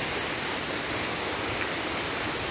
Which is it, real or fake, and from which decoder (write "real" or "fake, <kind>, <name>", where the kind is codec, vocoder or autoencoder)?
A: real